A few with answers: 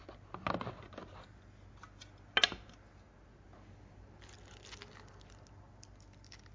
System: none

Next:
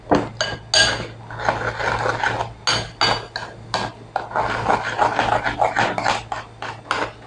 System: none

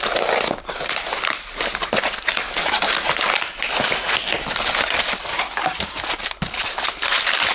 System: none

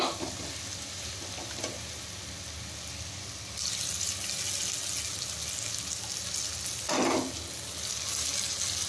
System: none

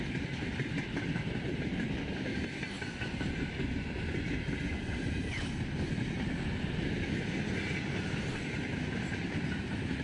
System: none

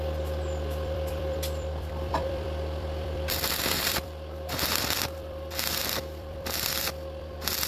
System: vocoder, BigVGAN v2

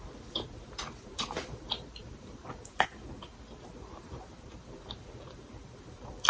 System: vocoder, BigVGAN v2